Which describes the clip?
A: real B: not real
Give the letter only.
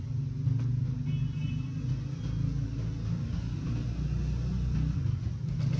A